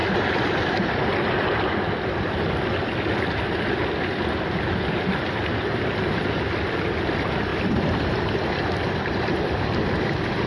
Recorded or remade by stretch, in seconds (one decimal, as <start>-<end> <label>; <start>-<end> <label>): 0.0-0.8 remade; 0.8-7.5 recorded; 7.5-10.5 remade